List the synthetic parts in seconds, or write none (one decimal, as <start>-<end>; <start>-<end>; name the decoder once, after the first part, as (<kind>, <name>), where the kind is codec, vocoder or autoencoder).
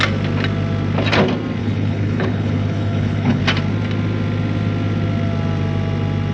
1.6-3.4 (codec, HILCodec)